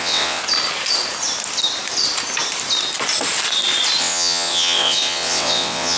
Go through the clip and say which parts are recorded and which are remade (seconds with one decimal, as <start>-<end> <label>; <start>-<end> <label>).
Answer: 0.0-0.4 remade; 0.4-4.0 recorded; 4.0-6.0 remade